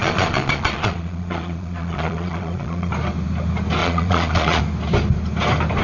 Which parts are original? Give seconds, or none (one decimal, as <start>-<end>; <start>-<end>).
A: 2.9-3.8; 4.6-5.8